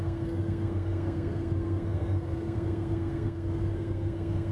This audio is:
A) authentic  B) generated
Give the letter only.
B